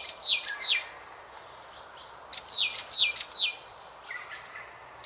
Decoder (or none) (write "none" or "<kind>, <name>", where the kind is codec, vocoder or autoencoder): none